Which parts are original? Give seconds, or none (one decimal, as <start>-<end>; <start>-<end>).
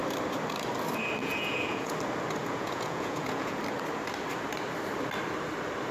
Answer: 0.0-1.2; 1.9-2.4; 3.6-5.9